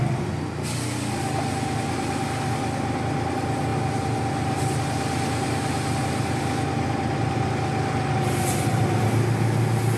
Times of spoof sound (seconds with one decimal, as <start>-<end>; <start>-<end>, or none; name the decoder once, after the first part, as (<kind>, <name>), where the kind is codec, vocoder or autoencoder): none

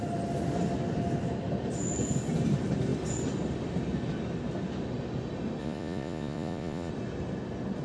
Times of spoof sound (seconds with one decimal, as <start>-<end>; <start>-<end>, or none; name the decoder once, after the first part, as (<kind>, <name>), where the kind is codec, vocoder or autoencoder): 5.6-6.9 (vocoder, Vocos)

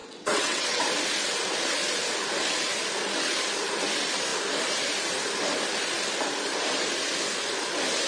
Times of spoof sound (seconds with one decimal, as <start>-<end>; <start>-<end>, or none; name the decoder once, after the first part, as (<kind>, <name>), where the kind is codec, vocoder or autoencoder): 0.0-0.8 (vocoder, WaveNeXt)

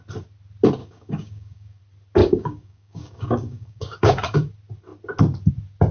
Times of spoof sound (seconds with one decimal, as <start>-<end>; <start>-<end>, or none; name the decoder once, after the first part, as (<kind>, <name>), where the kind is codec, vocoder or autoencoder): 0.8-1.8 (codec, DAC); 2.2-4.5

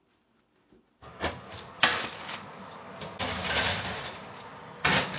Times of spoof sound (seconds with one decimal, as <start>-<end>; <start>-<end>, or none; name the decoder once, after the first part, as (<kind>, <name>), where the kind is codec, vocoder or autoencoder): none

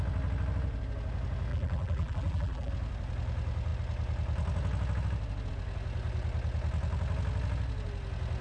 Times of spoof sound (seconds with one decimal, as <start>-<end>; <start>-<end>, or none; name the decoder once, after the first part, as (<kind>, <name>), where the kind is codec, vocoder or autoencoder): 1.5-2.7 (vocoder, BigVGAN v2)

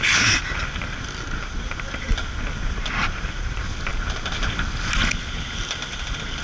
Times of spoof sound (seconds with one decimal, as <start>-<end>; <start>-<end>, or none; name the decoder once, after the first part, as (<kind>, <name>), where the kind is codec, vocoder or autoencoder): none